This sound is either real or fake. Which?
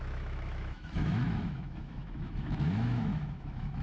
fake